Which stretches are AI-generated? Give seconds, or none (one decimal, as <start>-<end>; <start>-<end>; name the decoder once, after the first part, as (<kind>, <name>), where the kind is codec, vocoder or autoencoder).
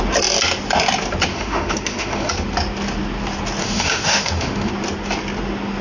1.3-2.3 (autoencoder, DAC-VAE); 3.6-4.7